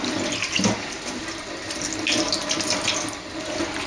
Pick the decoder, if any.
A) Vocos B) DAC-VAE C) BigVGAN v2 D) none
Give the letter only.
D